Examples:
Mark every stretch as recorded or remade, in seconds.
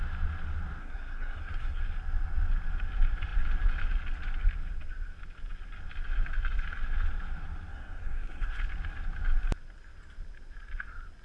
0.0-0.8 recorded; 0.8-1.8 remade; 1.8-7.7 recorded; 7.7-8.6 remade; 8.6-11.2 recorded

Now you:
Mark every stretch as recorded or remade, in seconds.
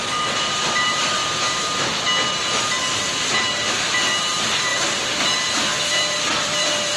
0.0-0.5 recorded; 0.5-1.2 remade; 1.2-3.7 recorded; 3.7-7.0 remade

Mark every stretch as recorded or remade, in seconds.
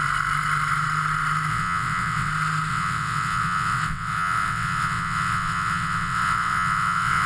0.0-1.5 recorded; 1.5-2.3 remade; 2.3-2.7 recorded; 2.7-7.3 remade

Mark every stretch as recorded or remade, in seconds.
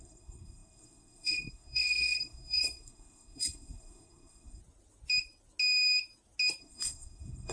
0.0-4.6 remade; 4.6-6.6 recorded; 6.6-7.5 remade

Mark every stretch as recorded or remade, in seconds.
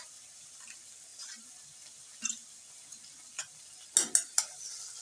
0.0-5.0 recorded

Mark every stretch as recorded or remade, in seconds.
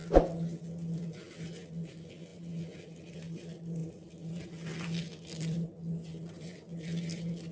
0.0-7.5 recorded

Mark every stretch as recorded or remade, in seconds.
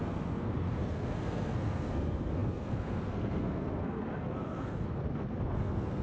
0.0-6.0 remade